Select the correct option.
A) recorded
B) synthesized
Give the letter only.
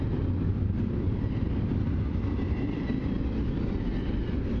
A